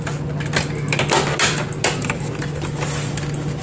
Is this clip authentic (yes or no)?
yes